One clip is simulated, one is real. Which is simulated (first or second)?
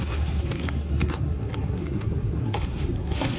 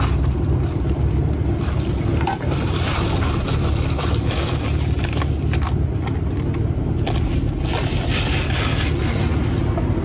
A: first